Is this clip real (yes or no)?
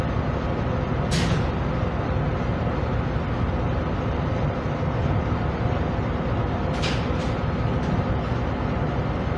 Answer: yes